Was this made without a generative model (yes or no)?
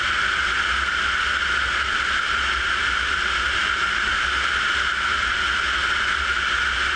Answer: yes